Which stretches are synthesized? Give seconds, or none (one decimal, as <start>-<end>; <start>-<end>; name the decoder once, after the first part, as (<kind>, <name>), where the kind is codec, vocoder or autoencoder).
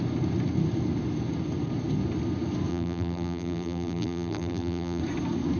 2.7-5.0 (vocoder, BigVGAN v2)